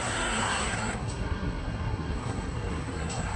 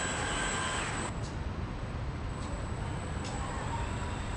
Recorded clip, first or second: second